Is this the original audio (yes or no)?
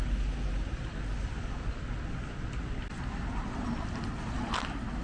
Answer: yes